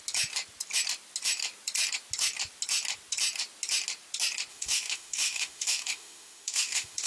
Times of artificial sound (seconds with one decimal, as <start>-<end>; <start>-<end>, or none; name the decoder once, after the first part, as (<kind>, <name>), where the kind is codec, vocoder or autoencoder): 4.5-7.1 (autoencoder, DAC-VAE)